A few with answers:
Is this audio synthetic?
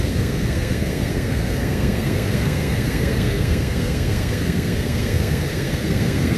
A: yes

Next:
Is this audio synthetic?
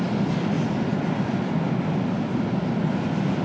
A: no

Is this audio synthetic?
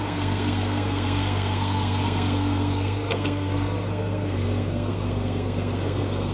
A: yes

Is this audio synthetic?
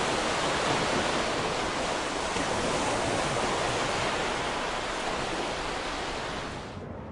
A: no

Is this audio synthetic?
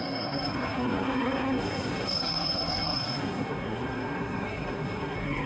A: yes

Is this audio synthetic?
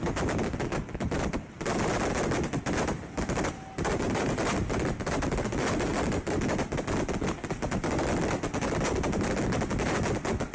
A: no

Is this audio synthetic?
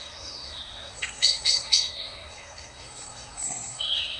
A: yes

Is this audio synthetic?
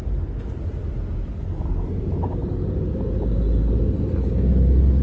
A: no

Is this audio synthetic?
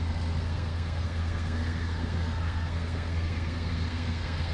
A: yes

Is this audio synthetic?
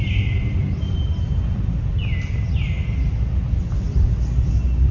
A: no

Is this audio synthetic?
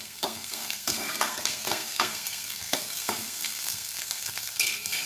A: yes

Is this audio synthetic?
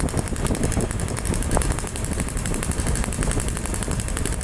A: no